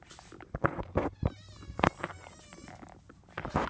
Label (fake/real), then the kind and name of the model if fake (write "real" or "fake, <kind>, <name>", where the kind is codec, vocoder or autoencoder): real